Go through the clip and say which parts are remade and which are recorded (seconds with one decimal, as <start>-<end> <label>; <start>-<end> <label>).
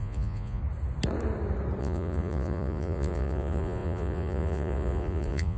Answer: 0.0-0.6 remade; 0.6-1.8 recorded; 1.8-5.6 remade